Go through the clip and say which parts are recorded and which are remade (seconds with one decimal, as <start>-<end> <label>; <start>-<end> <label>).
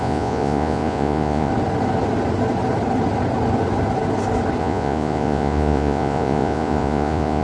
0.0-1.5 remade; 1.5-4.6 recorded; 4.6-7.4 remade